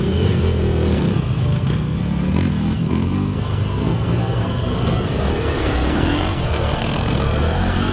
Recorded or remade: remade